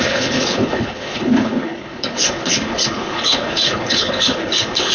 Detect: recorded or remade remade